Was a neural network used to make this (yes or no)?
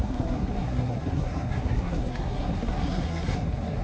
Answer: yes